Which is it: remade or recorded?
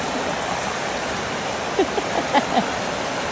recorded